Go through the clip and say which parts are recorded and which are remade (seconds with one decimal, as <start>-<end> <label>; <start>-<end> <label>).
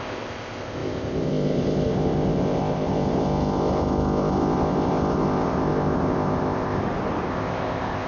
0.0-6.8 remade; 6.8-7.3 recorded; 7.3-8.1 remade